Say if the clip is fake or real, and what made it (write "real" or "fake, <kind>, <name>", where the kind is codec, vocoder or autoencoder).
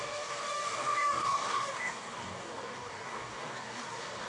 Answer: fake, codec, DAC